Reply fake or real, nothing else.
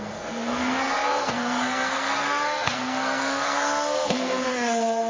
fake